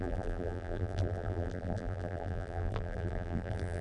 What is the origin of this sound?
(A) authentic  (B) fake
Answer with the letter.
B